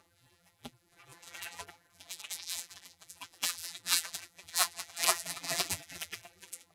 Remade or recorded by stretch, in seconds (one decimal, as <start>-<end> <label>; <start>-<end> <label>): 0.0-6.7 remade